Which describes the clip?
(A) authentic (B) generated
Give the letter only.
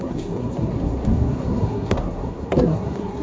B